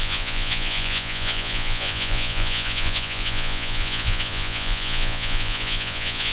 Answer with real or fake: fake